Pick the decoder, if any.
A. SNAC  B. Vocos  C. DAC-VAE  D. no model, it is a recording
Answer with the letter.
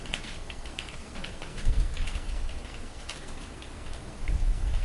A